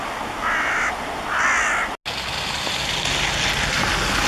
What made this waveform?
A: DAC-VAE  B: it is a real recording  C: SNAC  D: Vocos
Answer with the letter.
B